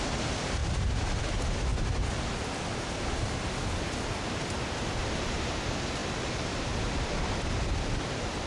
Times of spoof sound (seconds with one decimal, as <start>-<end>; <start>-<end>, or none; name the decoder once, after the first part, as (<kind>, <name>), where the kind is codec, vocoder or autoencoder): 0.6-1.2 (vocoder, BigVGAN v2); 6.0-8.5